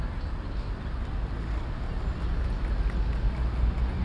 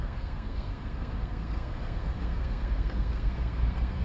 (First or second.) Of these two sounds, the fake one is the second